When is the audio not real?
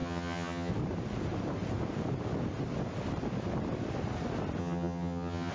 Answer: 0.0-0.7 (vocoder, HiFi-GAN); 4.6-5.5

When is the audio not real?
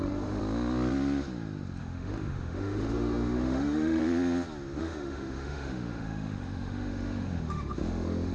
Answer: 0.0-0.4 (autoencoder, DAC-VAE); 1.8-4.0; 4.8-8.3